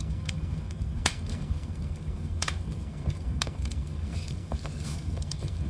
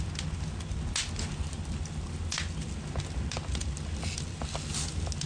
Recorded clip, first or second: second